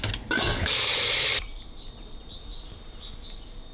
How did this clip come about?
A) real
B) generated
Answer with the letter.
A